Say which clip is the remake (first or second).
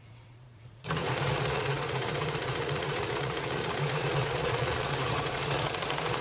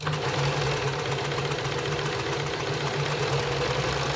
first